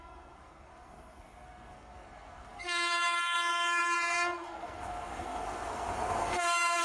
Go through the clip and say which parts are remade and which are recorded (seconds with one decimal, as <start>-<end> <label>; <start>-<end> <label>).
0.0-6.8 remade